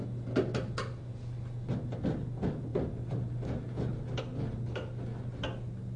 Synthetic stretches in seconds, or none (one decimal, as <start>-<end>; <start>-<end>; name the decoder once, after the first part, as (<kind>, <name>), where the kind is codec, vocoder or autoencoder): none